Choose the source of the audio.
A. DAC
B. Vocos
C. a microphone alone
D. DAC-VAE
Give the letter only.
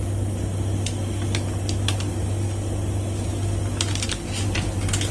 C